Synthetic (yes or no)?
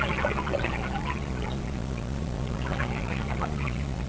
yes